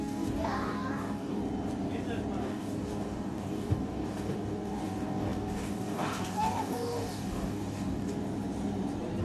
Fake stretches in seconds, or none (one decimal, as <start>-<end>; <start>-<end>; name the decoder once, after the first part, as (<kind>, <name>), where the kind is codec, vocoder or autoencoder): 0.0-1.4 (codec, DAC); 2.4-8.1